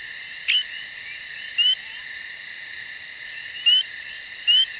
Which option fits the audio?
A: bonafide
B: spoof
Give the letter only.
A